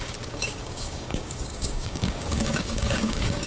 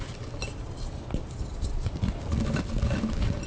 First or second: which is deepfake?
first